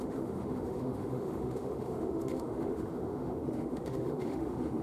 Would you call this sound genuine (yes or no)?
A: no